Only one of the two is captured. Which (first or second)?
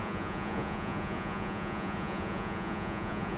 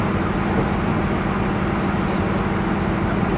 second